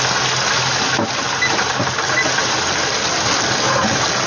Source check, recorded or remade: recorded